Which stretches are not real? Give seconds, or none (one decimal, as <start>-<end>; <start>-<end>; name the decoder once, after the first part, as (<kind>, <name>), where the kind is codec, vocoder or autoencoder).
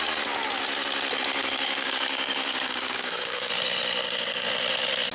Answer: 1.4-3.5 (codec, DAC); 4.0-4.5